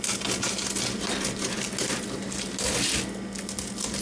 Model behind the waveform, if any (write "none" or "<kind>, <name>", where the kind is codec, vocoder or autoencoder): none